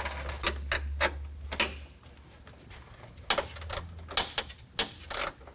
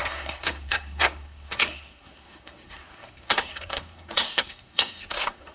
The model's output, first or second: second